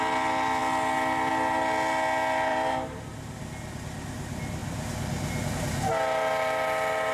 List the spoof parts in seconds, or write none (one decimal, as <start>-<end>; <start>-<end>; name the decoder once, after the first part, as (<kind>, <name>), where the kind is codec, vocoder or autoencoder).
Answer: 2.5-3.0 (vocoder, BigVGAN v2)